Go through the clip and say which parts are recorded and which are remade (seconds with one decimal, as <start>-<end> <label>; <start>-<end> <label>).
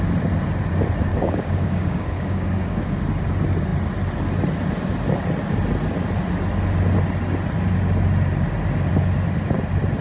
0.0-1.1 recorded; 1.1-3.0 remade; 3.0-10.0 recorded